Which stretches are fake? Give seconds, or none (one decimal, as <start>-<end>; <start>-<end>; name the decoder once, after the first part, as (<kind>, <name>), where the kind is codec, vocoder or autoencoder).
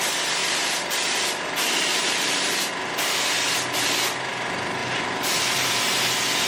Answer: 0.4-2.7 (vocoder, BigVGAN v2); 4.8-5.9